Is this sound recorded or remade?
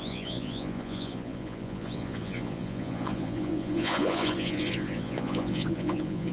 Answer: remade